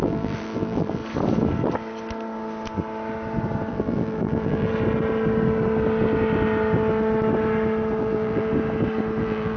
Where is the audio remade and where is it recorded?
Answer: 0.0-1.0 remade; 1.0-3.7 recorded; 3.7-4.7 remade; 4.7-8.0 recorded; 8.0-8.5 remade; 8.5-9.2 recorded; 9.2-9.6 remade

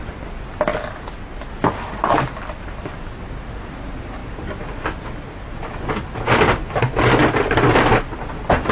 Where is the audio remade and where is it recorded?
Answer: 0.0-2.0 recorded; 2.0-2.8 remade; 2.8-8.7 recorded

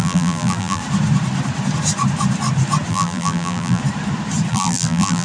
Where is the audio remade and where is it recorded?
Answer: 0.0-0.8 remade; 0.8-2.9 recorded; 2.9-3.8 remade; 3.8-4.5 recorded; 4.5-5.2 remade

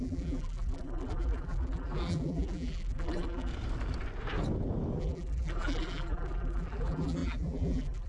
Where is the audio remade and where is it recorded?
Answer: 0.0-3.5 remade; 3.5-5.0 recorded; 5.0-8.1 remade